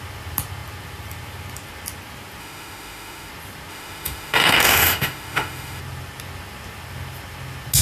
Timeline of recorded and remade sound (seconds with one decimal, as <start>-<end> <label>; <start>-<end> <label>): 0.0-2.4 recorded; 2.4-3.3 remade; 3.3-3.7 recorded; 3.7-5.8 remade; 5.8-7.8 recorded